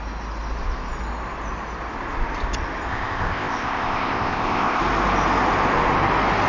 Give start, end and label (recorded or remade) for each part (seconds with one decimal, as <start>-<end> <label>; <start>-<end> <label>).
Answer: 0.0-2.9 recorded; 2.9-4.8 remade; 4.8-6.5 recorded